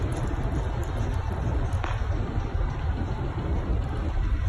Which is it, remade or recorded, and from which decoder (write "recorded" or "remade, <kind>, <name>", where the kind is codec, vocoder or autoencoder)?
recorded